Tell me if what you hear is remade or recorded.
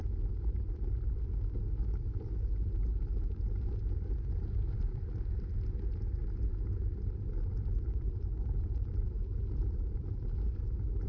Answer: recorded